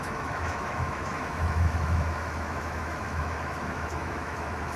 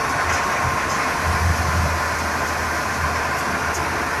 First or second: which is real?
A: second